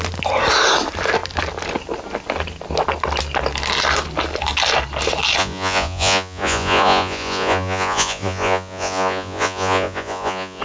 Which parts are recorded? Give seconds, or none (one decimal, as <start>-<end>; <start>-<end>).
0.0-5.4